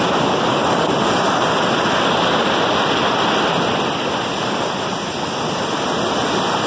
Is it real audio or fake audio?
real